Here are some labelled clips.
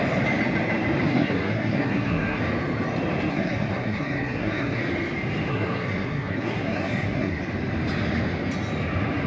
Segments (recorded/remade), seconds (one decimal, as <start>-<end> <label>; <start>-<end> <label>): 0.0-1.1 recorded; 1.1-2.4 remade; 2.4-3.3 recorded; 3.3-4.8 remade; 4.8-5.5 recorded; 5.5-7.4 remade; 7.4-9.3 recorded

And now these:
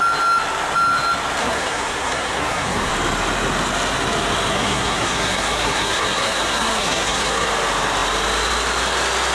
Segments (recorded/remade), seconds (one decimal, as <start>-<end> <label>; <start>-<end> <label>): 0.0-1.4 recorded; 1.4-2.9 remade; 2.9-4.5 recorded; 4.5-7.5 remade; 7.5-9.3 recorded

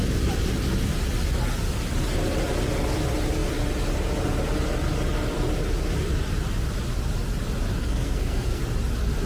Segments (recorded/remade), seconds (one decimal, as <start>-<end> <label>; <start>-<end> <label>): 0.0-7.8 recorded; 7.8-8.6 remade; 8.6-9.3 recorded

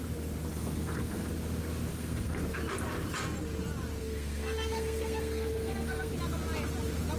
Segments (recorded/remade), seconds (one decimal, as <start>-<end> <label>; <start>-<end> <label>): 0.0-0.5 recorded; 0.5-1.3 remade; 1.3-1.9 recorded; 1.9-2.4 remade; 2.4-4.0 recorded; 4.0-6.1 remade; 6.1-7.2 recorded

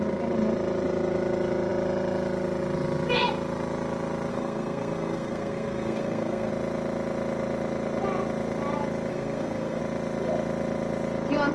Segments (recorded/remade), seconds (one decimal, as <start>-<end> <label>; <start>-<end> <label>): 0.0-4.3 recorded; 4.3-6.5 remade; 6.5-9.1 recorded; 9.1-9.8 remade; 9.8-11.5 recorded

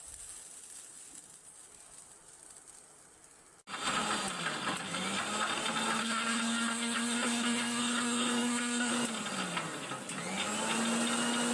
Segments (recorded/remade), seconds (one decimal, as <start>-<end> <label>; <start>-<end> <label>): 0.0-6.0 recorded; 6.0-8.9 remade; 8.9-11.5 recorded